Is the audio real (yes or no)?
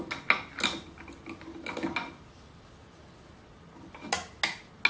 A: yes